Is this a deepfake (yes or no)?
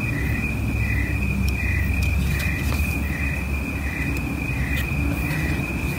no